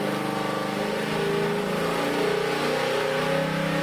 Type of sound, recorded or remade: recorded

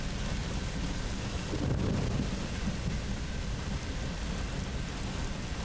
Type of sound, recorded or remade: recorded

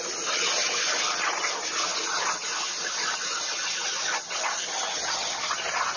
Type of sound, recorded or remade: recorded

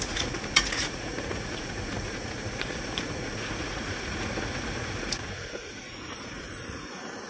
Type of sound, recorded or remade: remade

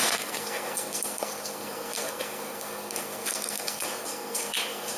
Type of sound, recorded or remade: remade